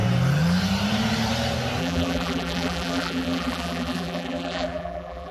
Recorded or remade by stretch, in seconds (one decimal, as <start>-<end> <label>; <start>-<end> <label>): 0.0-1.8 recorded; 1.8-5.3 remade